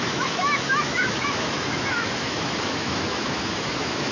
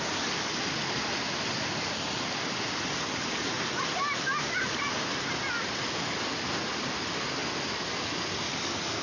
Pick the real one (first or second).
second